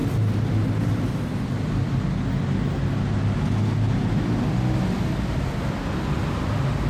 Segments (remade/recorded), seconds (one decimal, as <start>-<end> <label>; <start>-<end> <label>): 0.0-6.9 recorded